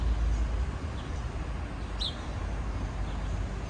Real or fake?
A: real